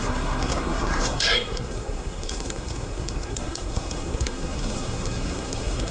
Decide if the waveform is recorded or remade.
remade